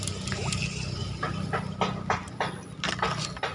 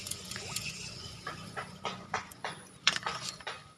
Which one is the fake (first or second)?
second